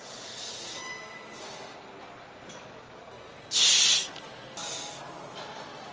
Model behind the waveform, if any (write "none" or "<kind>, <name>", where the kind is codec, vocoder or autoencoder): none